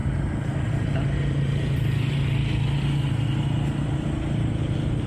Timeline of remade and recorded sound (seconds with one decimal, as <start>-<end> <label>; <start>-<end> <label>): 0.0-5.1 recorded